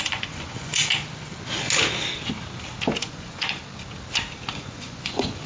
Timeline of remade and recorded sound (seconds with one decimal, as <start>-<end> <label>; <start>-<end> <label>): 0.0-0.7 remade; 0.7-3.0 recorded; 3.0-3.6 remade; 3.6-4.5 recorded; 4.5-5.5 remade